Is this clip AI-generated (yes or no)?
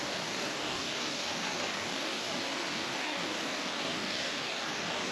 yes